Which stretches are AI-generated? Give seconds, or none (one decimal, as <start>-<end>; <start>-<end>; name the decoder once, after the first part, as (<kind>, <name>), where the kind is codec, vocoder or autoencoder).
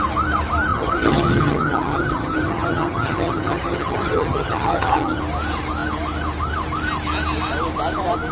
0.7-5.2 (vocoder, HiFi-GAN)